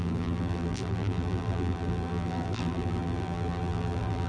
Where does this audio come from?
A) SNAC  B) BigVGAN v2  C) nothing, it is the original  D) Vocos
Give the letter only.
B